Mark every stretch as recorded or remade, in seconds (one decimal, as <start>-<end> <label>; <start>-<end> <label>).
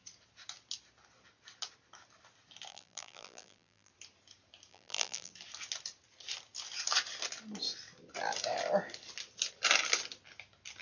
0.0-2.7 recorded; 2.7-3.9 remade; 3.9-4.7 recorded; 4.7-5.3 remade; 5.3-10.8 recorded